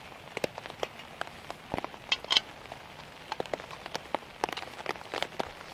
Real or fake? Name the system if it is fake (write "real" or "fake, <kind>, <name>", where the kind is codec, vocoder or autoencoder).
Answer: real